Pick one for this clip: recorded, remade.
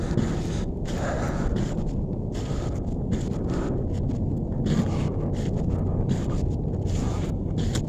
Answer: recorded